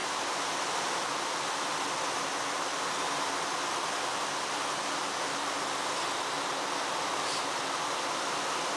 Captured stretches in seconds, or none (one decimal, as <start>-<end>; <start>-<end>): 0.0-8.8